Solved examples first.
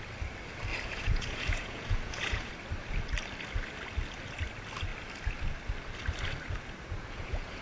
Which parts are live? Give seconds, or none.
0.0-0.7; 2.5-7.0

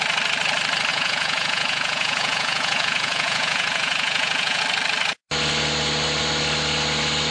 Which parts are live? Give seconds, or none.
0.0-0.9; 4.6-7.3

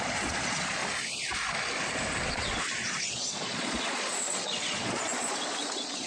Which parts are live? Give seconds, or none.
0.8-2.2

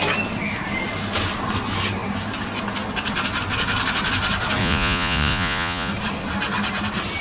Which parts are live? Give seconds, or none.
0.0-4.6; 5.9-7.2

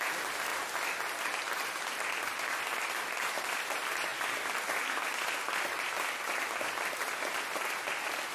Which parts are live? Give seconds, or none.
0.0-8.3

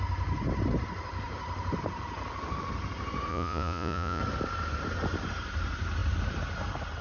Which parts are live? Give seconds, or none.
0.0-3.3; 4.2-7.0